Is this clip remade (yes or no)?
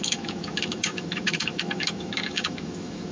yes